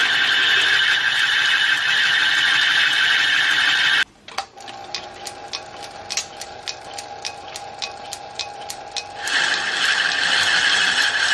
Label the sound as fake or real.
real